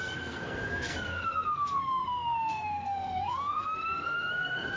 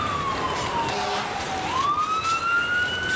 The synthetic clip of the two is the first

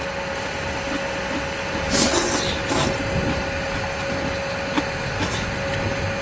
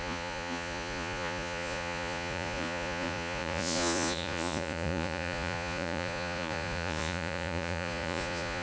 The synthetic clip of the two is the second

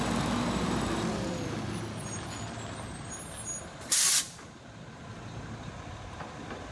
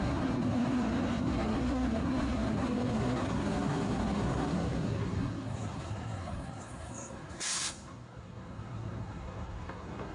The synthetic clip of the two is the second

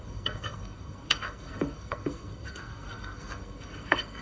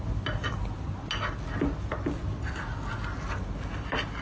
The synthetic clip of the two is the first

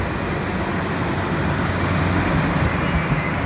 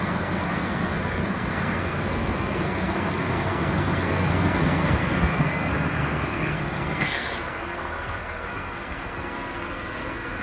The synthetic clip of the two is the second